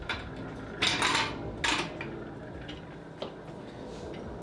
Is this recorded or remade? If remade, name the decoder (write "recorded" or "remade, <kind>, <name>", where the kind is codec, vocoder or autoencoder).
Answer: recorded